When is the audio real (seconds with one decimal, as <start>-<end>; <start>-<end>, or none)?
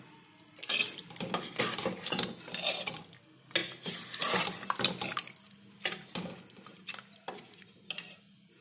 0.0-8.6